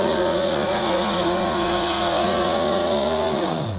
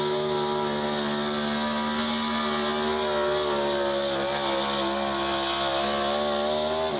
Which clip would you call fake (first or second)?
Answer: first